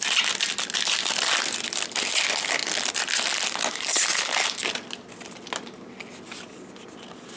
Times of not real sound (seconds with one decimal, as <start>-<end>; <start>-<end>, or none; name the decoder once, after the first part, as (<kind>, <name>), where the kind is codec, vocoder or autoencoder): none